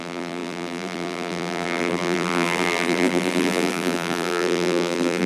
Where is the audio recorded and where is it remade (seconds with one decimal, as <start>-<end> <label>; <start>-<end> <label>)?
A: 0.0-5.3 remade